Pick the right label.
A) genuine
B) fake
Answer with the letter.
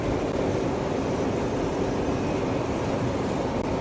A